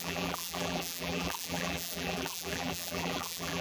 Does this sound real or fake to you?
fake